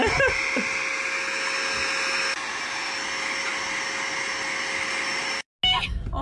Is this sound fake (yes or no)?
no